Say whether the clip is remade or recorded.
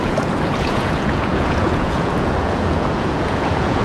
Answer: remade